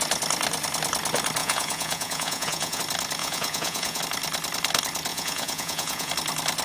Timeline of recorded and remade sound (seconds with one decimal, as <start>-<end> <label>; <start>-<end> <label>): 0.0-1.4 recorded; 1.4-2.8 remade; 2.8-3.2 recorded; 3.2-4.0 remade; 4.0-5.1 recorded; 5.1-6.1 remade; 6.1-6.6 recorded